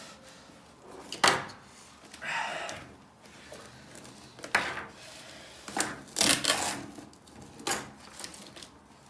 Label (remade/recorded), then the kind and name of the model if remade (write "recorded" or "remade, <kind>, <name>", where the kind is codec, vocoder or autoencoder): recorded